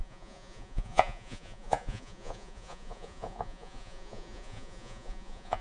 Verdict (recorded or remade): remade